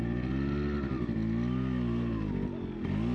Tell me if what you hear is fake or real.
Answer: real